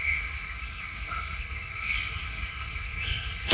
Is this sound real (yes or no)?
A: no